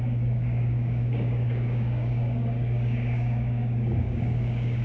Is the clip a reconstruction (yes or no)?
yes